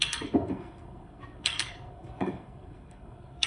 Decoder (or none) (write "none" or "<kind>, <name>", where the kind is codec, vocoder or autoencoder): codec, SNAC